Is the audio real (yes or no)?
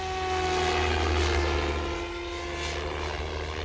yes